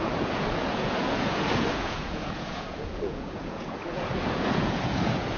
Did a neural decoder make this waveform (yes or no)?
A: yes